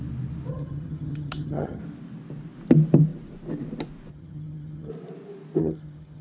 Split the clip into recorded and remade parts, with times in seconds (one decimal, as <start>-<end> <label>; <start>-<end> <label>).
0.0-0.5 recorded; 0.5-1.8 remade; 1.8-4.1 recorded; 4.1-4.9 remade; 4.9-5.6 recorded; 5.6-6.2 remade